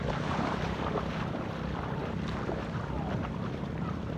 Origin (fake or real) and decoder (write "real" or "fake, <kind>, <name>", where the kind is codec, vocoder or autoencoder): fake, vocoder, BigVGAN v2